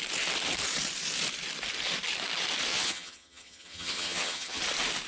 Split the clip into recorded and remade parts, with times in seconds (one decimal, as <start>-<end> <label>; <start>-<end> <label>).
0.0-2.7 recorded; 2.7-4.6 remade; 4.6-5.1 recorded